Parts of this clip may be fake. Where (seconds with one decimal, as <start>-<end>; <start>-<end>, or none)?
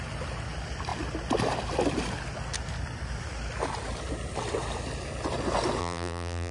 5.8-6.5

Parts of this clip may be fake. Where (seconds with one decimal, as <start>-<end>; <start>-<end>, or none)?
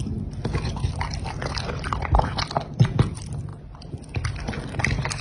none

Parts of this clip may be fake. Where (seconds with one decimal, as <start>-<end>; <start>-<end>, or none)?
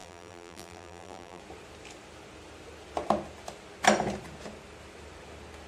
0.0-1.4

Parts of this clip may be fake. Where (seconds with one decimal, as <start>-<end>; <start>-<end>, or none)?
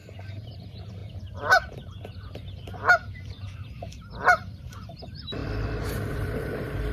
0.0-5.4; 6.1-6.9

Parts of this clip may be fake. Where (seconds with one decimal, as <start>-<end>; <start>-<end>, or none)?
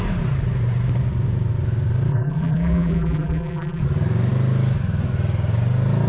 2.1-3.8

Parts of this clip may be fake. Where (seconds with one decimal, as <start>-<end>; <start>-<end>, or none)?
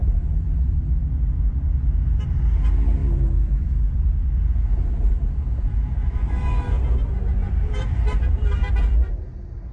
0.0-1.0; 5.0-6.1; 7.4-8.7